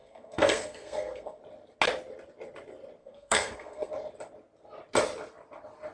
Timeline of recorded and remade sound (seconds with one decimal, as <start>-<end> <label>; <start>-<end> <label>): 0.0-1.4 remade; 1.4-3.0 recorded; 3.0-3.9 remade; 3.9-5.9 recorded